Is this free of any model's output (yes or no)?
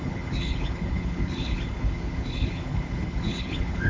no